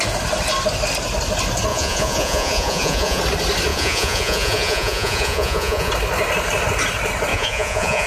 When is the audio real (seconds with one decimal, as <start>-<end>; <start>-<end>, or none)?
0.0-1.7; 3.2-3.7; 5.9-7.3